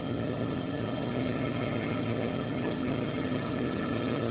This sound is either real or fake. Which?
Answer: fake